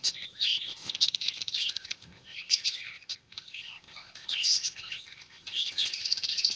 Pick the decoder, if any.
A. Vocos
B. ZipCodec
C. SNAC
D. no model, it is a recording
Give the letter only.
B